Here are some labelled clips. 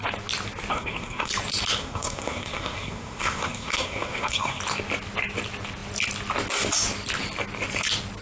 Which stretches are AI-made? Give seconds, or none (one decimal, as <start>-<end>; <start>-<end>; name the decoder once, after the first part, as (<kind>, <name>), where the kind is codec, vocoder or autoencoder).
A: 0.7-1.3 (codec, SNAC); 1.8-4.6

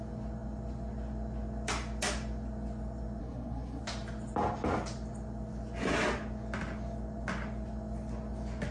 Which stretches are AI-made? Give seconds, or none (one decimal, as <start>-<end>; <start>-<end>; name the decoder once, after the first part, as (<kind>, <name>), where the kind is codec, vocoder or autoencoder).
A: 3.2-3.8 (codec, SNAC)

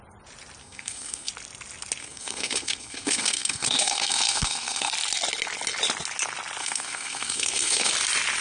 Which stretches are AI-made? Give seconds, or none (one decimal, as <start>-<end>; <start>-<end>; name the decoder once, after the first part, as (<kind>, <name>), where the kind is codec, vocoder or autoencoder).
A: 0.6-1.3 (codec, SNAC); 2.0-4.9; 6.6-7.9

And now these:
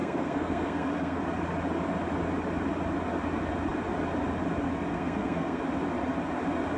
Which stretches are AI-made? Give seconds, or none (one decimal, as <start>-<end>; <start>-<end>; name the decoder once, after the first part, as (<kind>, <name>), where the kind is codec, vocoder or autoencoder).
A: 0.0-1.2 (codec, SNAC); 4.9-5.6

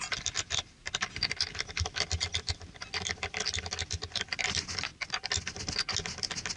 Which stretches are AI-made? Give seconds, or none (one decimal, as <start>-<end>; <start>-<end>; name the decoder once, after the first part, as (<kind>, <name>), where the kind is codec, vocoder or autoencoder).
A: none

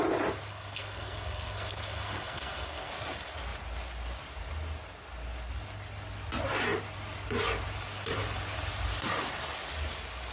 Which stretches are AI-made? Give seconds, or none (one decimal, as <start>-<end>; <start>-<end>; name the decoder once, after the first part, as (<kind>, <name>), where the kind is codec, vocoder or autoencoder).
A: 0.5-2.9 (codec, SNAC)